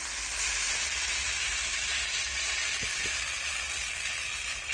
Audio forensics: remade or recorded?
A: recorded